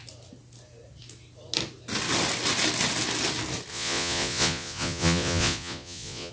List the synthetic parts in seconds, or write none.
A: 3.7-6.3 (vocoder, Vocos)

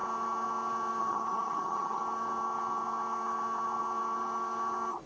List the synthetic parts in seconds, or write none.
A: 1.0-2.0 (vocoder, HiFi-GAN)

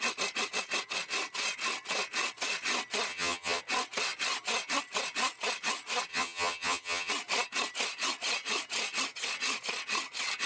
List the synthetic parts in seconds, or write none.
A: 3.1-3.6 (vocoder, HiFi-GAN); 6.1-7.1